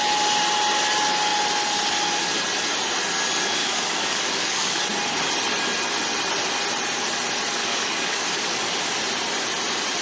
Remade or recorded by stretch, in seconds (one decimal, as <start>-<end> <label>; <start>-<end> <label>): 0.0-3.6 recorded; 3.6-4.8 remade; 4.8-7.6 recorded; 7.6-8.8 remade; 8.8-10.0 recorded